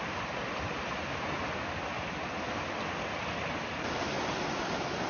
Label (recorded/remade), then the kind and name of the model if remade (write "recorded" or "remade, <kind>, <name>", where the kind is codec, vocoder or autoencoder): recorded